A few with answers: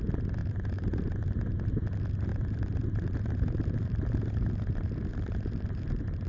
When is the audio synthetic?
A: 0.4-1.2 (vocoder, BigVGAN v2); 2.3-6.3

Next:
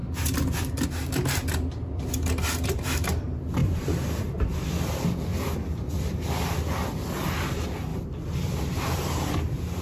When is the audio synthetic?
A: 0.0-0.6 (vocoder, BigVGAN v2); 3.6-4.2; 7.9-9.8